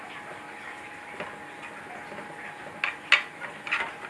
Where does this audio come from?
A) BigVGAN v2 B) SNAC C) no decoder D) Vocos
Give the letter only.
C